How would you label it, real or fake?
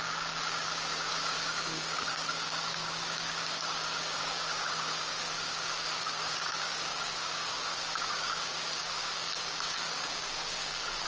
fake